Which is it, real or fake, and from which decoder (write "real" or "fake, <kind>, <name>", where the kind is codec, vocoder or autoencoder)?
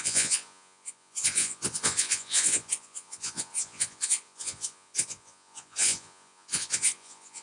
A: fake, vocoder, Vocos